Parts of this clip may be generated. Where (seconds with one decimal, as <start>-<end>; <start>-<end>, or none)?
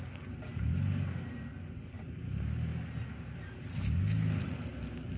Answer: none